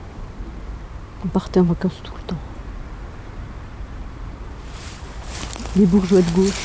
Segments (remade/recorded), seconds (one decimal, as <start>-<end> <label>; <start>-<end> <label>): 0.0-1.3 recorded; 1.3-5.3 remade; 5.3-6.6 recorded